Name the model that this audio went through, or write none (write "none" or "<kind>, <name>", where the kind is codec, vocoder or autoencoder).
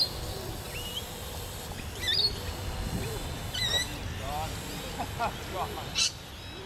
none